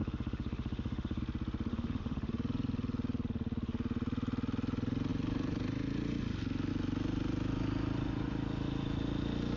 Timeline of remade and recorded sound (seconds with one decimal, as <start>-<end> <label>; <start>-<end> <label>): 0.0-1.2 remade; 1.2-1.7 recorded; 1.7-2.3 remade; 2.3-9.6 recorded